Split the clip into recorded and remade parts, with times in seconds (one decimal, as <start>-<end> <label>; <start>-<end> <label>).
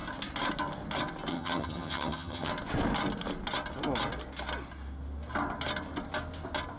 0.0-1.3 recorded; 1.3-2.5 remade; 2.5-6.8 recorded